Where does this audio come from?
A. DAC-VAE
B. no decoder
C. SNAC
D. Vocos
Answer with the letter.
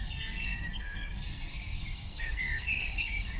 C